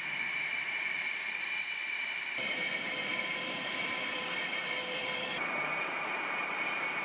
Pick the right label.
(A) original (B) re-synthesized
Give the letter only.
B